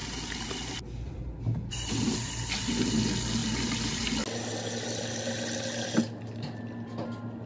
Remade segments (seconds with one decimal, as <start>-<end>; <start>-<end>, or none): none